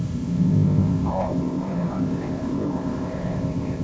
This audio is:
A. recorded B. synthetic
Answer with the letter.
B